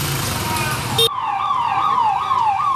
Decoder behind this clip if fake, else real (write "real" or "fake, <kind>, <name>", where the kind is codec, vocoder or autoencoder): real